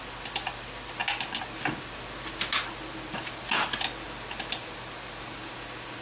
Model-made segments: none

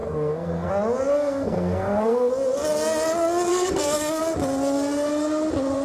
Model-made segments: 0.0-0.7 (codec, SNAC); 1.1-2.3; 3.5-4.2